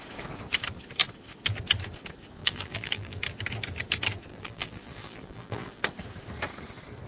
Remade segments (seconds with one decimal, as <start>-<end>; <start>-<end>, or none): 2.4-3.2; 4.3-5.8